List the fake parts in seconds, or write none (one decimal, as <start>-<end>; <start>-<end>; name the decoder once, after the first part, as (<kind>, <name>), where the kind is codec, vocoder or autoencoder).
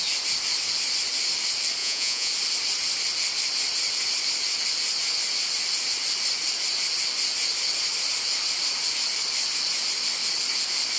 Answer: 1.8-2.3 (vocoder, Vocos)